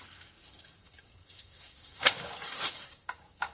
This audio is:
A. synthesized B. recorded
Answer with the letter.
A